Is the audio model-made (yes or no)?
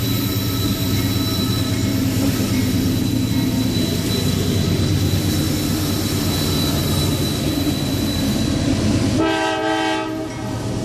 no